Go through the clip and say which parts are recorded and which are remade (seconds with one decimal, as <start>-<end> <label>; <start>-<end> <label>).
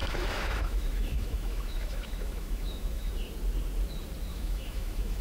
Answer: 0.0-3.1 remade; 3.1-4.3 recorded; 4.3-5.2 remade